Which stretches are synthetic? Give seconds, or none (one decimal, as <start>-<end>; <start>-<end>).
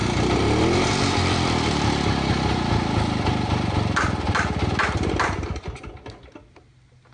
none